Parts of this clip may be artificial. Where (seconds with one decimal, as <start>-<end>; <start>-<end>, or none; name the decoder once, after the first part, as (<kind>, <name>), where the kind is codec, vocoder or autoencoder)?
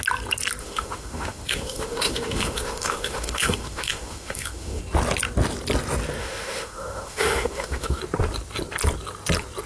0.6-4.8 (autoencoder, DAC-VAE); 6.2-8.0